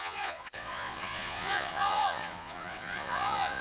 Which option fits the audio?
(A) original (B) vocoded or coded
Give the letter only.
B